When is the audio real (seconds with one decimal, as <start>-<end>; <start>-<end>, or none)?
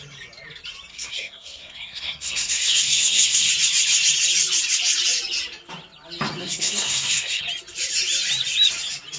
0.0-0.9; 3.5-6.4; 7.4-9.2